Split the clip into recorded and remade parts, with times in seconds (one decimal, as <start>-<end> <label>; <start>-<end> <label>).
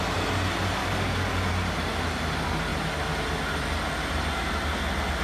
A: 0.0-0.8 recorded; 0.8-1.5 remade; 1.5-5.2 recorded